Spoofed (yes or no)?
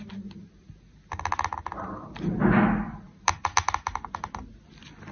no